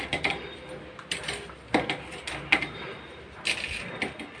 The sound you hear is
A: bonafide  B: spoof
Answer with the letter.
A